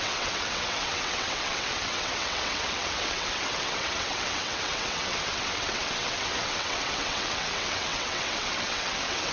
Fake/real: fake